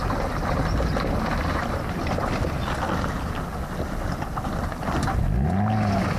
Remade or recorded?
recorded